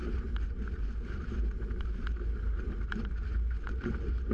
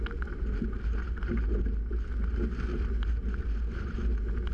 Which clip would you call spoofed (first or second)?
first